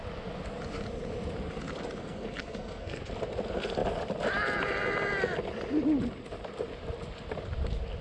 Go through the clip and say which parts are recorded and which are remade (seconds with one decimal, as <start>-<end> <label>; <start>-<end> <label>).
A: 0.0-2.0 recorded; 2.0-3.0 remade; 3.0-8.0 recorded